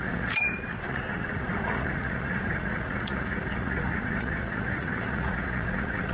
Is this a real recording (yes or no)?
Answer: no